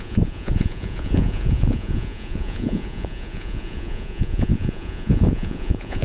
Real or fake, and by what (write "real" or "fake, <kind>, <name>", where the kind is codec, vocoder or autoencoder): fake, vocoder, Vocos